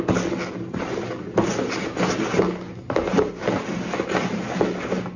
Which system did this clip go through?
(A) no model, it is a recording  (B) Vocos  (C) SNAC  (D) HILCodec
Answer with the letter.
A